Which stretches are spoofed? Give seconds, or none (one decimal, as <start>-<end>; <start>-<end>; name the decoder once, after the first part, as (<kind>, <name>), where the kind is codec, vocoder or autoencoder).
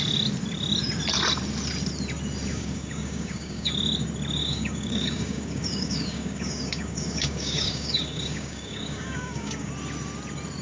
2.5-3.7 (codec, DAC); 4.4-9.7